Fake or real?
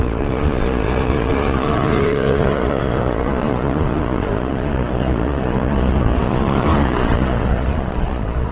fake